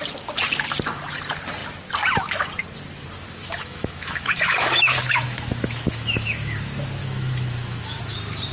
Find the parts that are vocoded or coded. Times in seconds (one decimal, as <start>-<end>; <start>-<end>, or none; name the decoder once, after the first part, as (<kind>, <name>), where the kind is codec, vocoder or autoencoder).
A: 3.4-6.5 (autoencoder, DAC-VAE); 7.0-8.0